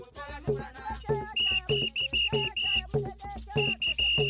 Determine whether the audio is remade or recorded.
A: recorded